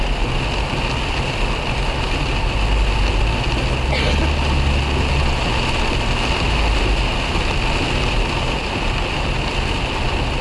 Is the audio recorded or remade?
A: recorded